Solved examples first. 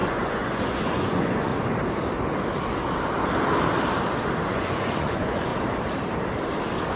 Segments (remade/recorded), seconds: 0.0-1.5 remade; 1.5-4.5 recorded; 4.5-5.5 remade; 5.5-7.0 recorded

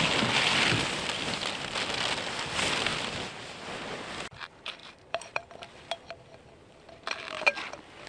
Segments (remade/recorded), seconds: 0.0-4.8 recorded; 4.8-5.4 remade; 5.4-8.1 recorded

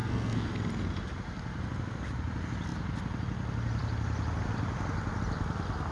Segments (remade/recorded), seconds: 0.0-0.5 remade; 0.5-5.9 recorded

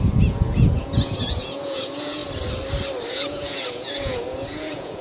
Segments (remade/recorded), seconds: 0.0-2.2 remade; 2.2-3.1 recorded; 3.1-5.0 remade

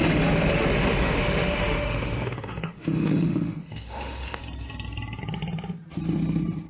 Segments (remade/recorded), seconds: 0.0-4.4 remade; 4.4-6.7 recorded